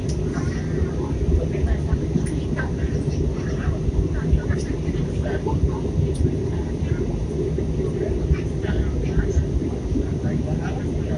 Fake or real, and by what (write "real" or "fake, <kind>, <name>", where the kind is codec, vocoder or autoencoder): real